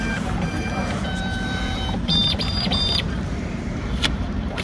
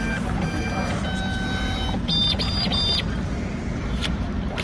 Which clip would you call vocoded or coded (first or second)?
first